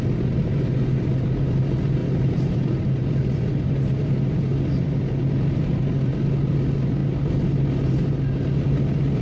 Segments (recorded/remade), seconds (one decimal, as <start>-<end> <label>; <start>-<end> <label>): 0.0-0.4 recorded; 0.4-1.1 remade; 1.1-2.0 recorded; 2.0-3.0 remade; 3.0-9.2 recorded